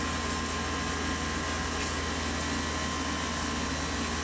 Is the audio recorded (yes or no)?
yes